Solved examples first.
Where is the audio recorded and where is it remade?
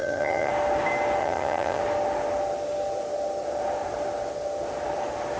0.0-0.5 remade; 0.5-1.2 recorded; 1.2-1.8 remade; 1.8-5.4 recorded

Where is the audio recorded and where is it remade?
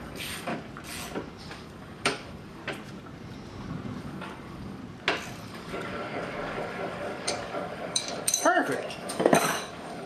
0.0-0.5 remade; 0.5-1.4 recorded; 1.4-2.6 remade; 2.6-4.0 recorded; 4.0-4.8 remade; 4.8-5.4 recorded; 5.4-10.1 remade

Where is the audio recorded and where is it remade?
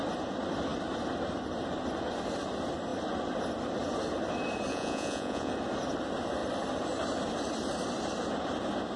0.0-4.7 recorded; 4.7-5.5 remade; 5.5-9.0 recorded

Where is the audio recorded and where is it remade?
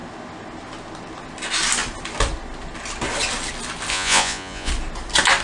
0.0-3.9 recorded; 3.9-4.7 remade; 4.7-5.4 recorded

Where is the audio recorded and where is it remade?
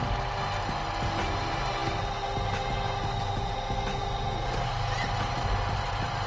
0.0-6.3 recorded